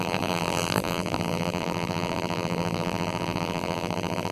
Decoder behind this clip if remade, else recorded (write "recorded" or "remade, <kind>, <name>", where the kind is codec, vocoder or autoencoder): remade, vocoder, BigVGAN v2